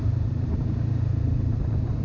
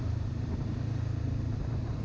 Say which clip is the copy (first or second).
first